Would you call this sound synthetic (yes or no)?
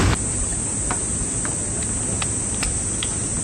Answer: no